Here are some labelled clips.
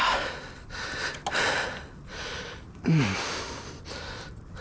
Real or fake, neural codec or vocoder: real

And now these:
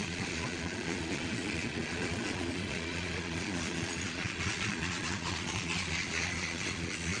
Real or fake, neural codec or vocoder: fake, vocoder, Vocos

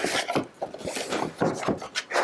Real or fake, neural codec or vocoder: real